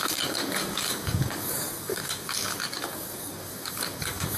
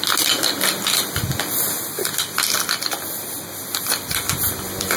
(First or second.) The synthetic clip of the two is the first